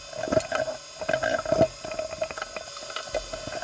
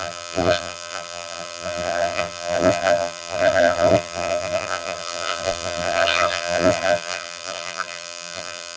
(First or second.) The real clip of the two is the first